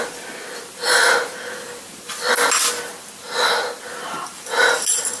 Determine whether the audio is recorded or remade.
recorded